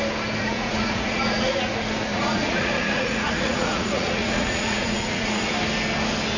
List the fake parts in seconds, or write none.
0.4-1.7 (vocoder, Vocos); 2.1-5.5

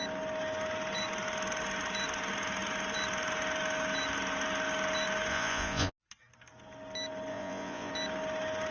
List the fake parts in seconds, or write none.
5.3-5.9 (vocoder, Vocos); 7.3-7.9

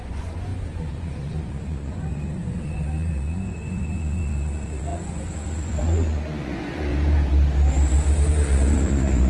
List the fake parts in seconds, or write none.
0.0-6.9 (vocoder, Vocos); 8.3-9.3